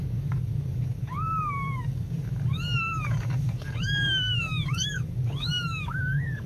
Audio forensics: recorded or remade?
remade